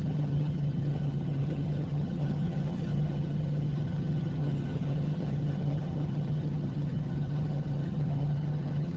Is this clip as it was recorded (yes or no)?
no